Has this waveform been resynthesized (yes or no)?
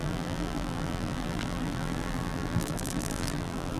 yes